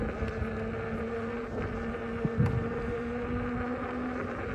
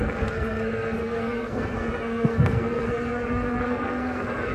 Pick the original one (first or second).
first